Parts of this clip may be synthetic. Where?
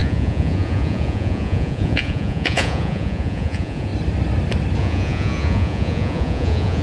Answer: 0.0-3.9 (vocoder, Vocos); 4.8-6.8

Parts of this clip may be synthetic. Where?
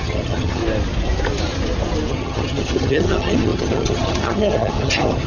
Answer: 0.0-0.6 (vocoder, HiFi-GAN); 2.1-5.3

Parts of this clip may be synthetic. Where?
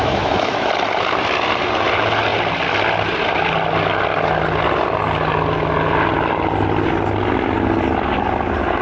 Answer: 0.0-0.7 (autoencoder, DAC-VAE)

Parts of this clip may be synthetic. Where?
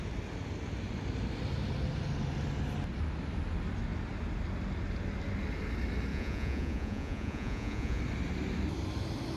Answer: 6.1-8.0 (vocoder, Vocos)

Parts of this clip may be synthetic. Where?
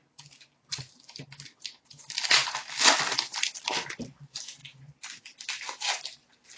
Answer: none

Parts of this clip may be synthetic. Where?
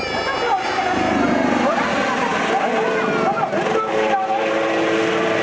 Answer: none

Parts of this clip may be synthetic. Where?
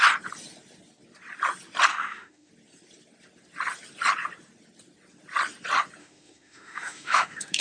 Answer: 1.9-2.5 (autoencoder, DAC-VAE); 6.0-7.6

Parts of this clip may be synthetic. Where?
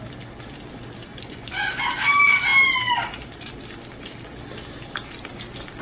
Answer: 1.1-1.8 (vocoder, Vocos)